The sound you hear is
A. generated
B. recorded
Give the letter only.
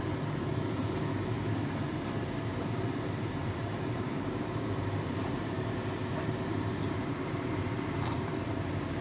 A